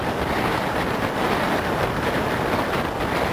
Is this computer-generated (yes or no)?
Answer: no